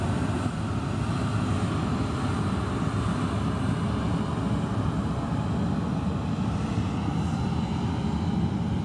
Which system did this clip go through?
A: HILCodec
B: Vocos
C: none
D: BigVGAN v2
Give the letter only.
C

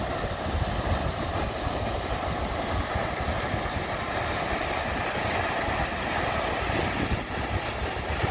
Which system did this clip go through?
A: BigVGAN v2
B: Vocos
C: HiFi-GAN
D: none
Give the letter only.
D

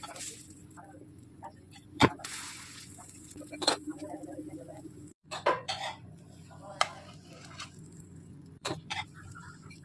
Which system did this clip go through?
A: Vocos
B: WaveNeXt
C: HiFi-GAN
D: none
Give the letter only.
A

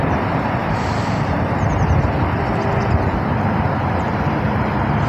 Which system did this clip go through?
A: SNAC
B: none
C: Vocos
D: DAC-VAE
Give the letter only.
B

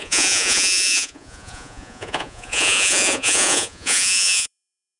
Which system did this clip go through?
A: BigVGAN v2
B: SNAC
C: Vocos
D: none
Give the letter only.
C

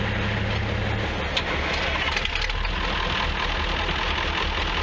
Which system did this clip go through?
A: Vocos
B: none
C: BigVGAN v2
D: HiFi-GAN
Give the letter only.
B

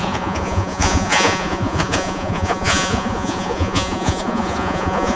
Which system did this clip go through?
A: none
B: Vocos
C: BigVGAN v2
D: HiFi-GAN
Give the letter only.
B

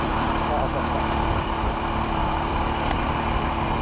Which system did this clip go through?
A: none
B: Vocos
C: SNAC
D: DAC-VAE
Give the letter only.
A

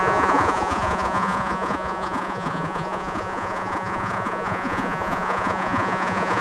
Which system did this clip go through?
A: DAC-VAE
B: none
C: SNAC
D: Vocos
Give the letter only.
D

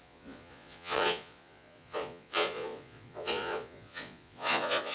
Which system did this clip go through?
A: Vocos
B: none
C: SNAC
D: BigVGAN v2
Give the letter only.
A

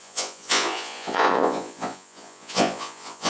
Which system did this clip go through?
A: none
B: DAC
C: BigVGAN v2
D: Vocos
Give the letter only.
D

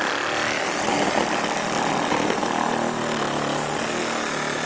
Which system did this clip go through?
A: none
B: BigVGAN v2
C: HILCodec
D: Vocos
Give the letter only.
A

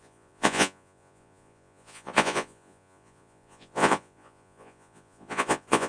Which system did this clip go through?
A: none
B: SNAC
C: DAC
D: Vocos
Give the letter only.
D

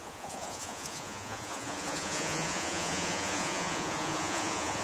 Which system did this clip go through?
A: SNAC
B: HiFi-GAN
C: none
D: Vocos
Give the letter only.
D